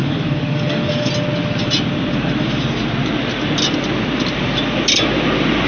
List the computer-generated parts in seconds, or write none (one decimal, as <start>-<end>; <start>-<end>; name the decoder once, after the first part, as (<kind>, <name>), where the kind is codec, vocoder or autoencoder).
0.0-1.1 (codec, DAC)